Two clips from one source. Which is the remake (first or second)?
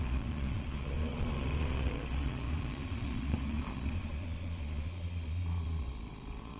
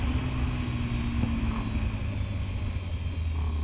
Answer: first